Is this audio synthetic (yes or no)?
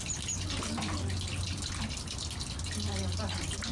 no